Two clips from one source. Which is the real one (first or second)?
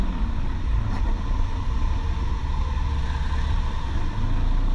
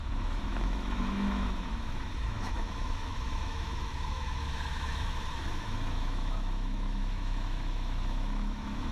first